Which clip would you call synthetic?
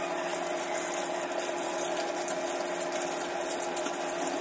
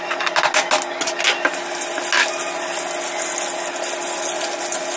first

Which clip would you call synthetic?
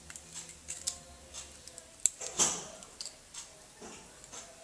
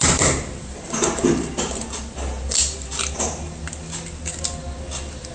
second